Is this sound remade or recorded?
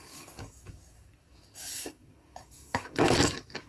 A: remade